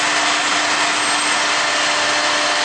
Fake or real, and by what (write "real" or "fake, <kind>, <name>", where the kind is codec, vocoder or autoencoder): real